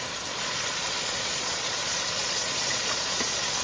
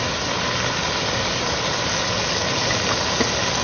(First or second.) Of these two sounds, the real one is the second